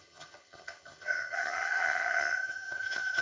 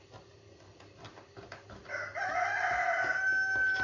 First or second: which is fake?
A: first